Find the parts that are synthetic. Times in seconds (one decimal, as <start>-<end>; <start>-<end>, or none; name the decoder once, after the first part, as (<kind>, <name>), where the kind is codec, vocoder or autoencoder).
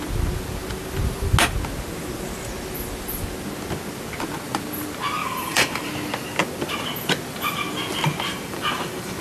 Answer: 5.2-5.9 (vocoder, BigVGAN v2); 8.3-9.2